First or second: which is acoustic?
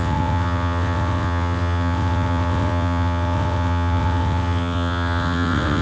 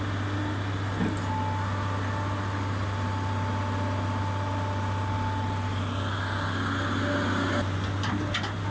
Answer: second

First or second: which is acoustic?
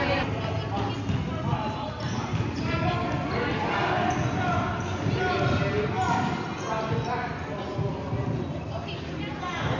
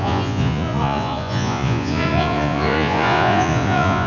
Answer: first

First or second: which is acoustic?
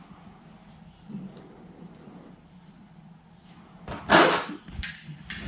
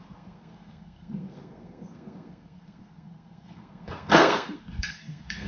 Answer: first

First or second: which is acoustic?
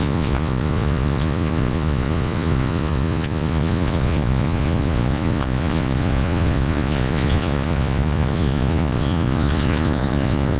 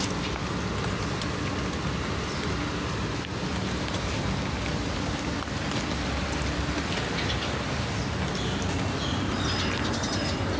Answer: second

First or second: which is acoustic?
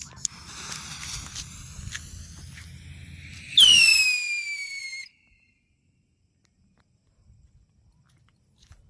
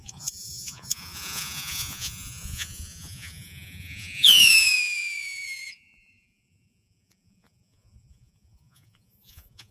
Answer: first